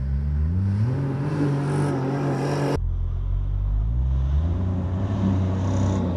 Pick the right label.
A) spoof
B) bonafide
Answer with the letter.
B